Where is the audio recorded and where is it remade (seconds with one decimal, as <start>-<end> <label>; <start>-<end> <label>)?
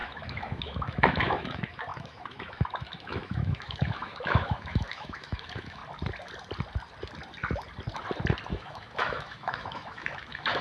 0.0-5.8 remade; 5.8-8.5 recorded; 8.5-10.6 remade